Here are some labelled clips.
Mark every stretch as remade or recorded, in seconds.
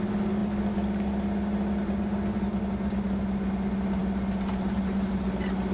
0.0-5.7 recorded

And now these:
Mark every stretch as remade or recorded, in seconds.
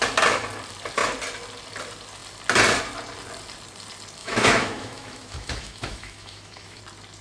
0.0-4.2 recorded; 4.2-6.8 remade; 6.8-7.2 recorded